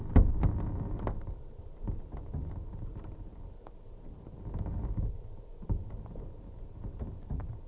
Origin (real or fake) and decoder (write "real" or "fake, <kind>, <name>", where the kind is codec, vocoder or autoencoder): real